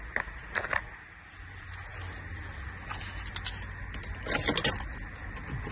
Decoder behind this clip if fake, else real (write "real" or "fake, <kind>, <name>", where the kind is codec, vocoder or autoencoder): real